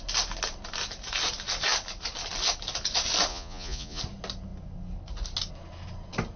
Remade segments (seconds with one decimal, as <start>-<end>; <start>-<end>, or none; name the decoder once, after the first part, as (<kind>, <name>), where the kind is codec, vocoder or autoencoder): 3.3-4.0 (vocoder, Vocos)